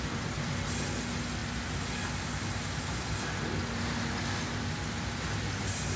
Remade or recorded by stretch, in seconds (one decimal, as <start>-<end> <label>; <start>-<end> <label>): 0.0-6.0 recorded